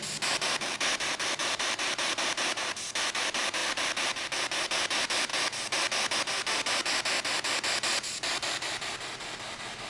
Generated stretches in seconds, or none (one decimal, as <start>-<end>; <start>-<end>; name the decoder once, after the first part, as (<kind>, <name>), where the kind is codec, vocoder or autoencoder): 1.4-2.8 (vocoder, BigVGAN v2); 3.6-4.2; 7.9-8.9